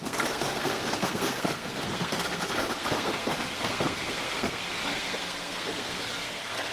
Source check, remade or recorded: remade